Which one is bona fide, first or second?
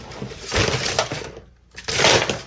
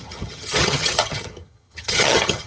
first